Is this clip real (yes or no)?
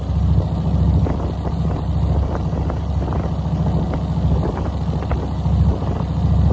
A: yes